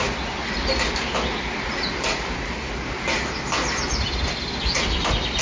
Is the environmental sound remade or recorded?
recorded